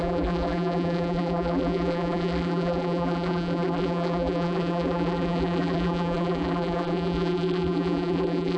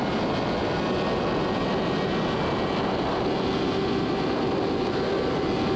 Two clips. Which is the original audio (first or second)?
second